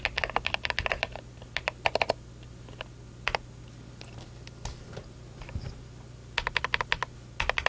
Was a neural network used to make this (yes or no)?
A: no